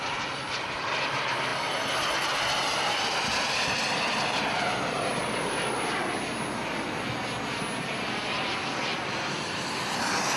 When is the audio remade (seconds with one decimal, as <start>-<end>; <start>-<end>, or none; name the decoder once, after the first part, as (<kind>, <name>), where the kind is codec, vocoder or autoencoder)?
none